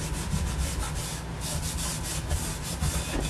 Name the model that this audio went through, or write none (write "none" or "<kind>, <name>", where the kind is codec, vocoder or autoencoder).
none